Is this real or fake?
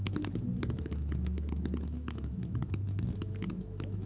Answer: fake